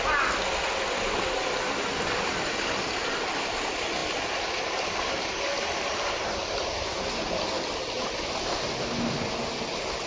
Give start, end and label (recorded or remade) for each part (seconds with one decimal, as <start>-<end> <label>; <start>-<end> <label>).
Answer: 0.0-10.1 recorded